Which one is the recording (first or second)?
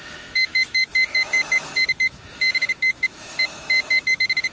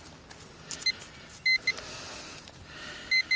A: second